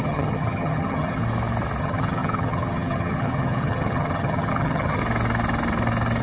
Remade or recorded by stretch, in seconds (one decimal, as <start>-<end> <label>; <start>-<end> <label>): 0.0-1.2 remade; 1.2-1.8 recorded; 1.8-5.0 remade; 5.0-6.2 recorded